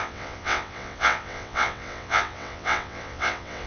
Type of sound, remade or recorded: remade